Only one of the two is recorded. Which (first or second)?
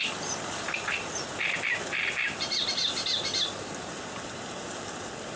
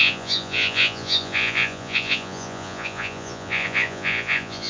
first